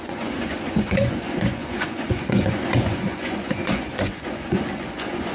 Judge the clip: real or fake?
fake